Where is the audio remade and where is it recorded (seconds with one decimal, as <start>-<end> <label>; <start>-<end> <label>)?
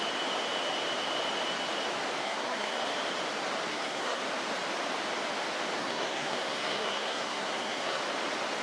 0.0-2.2 recorded; 2.2-2.9 remade; 2.9-3.7 recorded; 3.7-4.2 remade; 4.2-5.8 recorded; 5.8-8.0 remade; 8.0-8.6 recorded